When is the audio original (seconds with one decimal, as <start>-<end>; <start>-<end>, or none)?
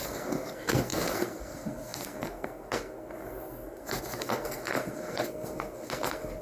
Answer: none